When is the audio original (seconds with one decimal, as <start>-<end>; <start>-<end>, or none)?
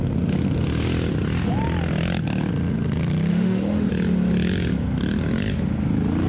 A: 0.0-3.3; 3.9-6.3